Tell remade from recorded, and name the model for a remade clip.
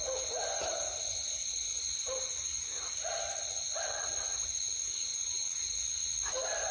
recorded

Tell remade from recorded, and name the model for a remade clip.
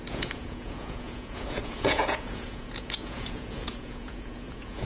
remade, vocoder, Vocos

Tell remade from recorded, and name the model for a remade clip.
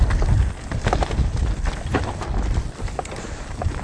recorded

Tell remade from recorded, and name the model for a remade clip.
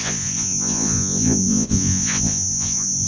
remade, vocoder, Vocos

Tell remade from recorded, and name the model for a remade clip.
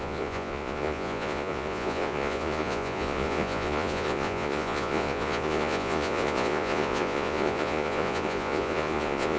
remade, vocoder, Vocos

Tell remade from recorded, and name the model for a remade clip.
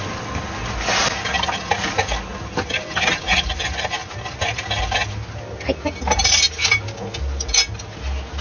recorded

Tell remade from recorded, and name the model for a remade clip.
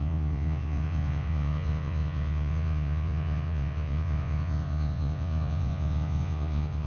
remade, vocoder, Vocos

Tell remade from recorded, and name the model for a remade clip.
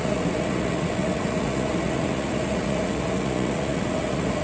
remade, vocoder, Vocos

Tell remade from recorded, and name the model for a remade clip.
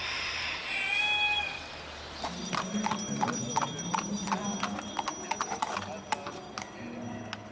recorded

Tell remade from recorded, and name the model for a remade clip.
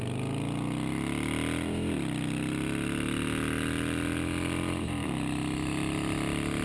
recorded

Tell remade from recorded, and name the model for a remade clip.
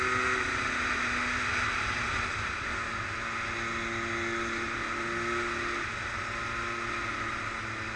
recorded